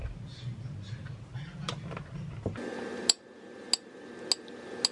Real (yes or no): yes